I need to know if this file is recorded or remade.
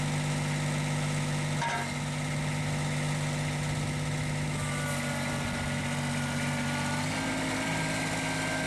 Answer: recorded